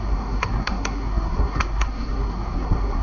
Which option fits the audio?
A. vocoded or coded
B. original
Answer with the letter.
A